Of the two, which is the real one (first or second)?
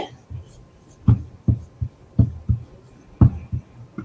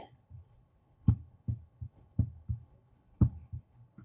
first